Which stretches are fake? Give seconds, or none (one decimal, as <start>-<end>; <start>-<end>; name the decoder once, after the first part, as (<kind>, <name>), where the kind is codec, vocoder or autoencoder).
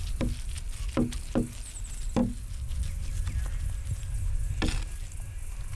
none